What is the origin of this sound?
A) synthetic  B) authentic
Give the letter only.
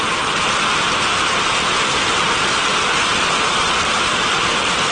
B